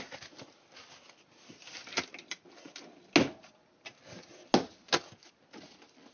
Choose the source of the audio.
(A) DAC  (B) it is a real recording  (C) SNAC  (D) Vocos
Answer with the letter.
B